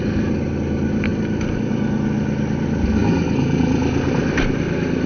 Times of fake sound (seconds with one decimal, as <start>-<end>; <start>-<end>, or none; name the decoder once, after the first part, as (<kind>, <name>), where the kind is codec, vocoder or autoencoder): none